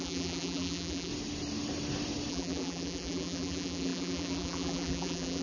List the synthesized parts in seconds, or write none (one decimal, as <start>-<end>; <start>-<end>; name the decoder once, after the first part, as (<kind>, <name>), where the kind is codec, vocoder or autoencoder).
0.0-1.1 (vocoder, BigVGAN v2); 2.3-5.4